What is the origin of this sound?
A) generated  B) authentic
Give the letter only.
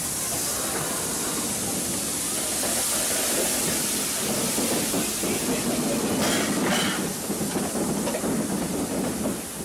B